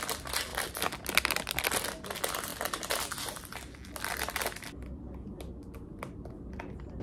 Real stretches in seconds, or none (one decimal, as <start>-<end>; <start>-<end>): 0.0-7.0